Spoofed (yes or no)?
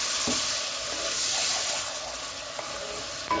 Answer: no